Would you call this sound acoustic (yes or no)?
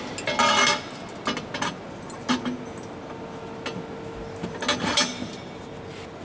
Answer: yes